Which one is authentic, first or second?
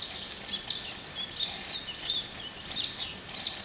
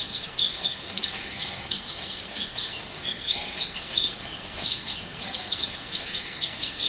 first